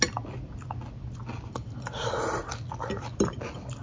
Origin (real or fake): real